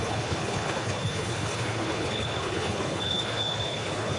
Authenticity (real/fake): fake